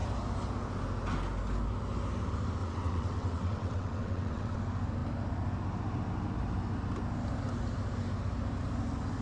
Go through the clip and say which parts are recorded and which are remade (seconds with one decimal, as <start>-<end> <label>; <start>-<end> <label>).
0.0-2.6 recorded; 2.6-4.6 remade; 4.6-9.2 recorded